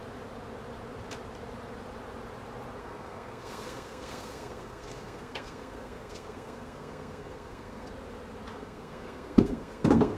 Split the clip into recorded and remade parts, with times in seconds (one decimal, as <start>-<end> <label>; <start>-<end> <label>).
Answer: 0.0-2.8 recorded; 2.8-7.9 remade; 7.9-8.5 recorded; 8.5-10.2 remade